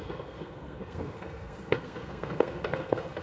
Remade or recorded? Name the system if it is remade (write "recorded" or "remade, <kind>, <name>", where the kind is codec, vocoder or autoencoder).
remade, codec, SNAC